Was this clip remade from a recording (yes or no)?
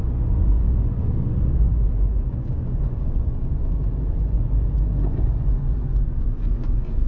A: yes